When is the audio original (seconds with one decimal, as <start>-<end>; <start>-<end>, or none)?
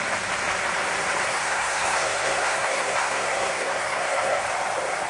0.0-1.3; 4.4-5.1